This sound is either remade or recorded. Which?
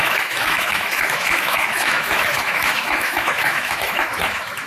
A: remade